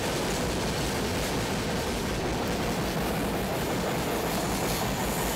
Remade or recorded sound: recorded